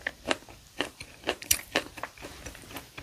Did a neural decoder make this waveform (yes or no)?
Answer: yes